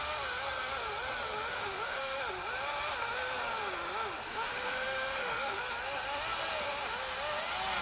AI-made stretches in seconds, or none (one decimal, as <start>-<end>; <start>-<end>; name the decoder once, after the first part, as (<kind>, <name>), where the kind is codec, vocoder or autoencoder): 1.5-2.2 (autoencoder, DAC-VAE); 4.3-5.6